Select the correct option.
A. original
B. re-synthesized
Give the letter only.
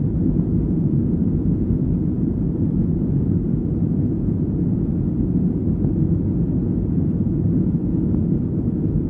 B